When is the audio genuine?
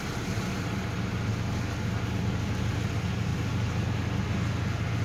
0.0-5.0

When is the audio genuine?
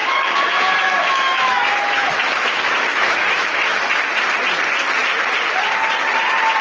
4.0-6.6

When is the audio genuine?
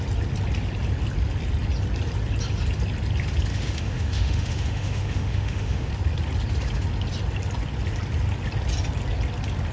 0.0-3.5; 5.9-9.7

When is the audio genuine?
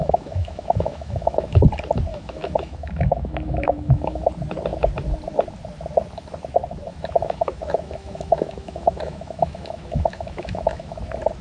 1.6-2.1; 4.3-6.9; 11.0-11.4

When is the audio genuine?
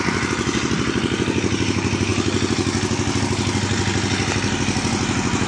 0.0-5.5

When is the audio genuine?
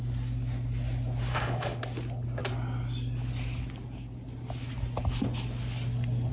0.0-1.3; 1.8-6.3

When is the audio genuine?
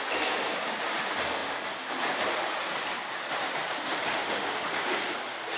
0.0-4.1; 4.7-5.6